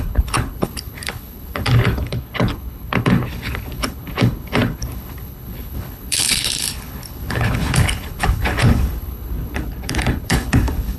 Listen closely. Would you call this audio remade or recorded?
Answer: remade